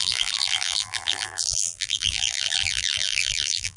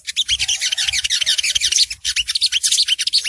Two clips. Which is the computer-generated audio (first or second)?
first